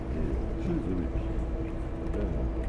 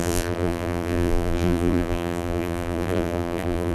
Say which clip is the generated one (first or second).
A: second